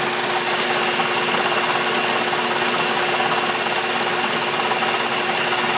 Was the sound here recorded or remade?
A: recorded